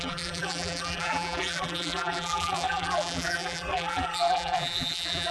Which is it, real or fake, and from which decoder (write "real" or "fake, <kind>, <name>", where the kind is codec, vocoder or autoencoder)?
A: fake, vocoder, BigVGAN v2